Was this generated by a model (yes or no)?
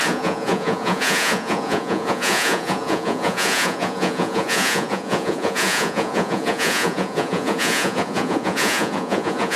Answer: yes